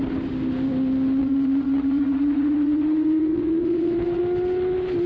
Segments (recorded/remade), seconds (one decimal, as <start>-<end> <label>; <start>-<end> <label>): 0.0-1.2 recorded; 1.2-4.2 remade; 4.2-5.1 recorded